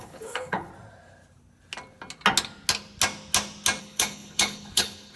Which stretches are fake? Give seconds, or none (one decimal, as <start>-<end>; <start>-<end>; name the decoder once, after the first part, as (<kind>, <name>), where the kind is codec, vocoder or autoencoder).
0.0-0.7 (codec, HILCodec); 3.8-5.2